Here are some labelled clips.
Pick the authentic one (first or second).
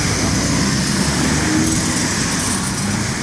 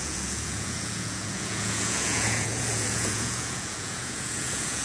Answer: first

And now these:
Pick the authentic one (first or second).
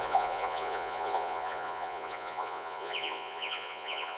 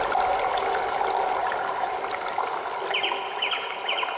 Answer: second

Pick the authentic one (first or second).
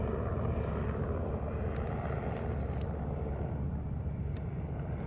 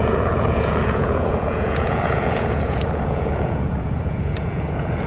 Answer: first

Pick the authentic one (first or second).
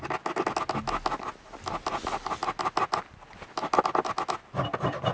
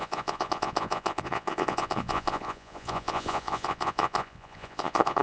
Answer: first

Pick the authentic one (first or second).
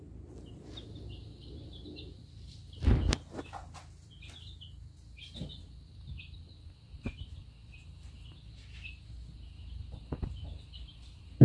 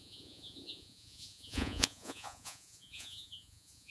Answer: first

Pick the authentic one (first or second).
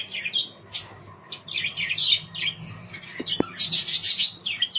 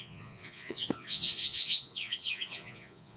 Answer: first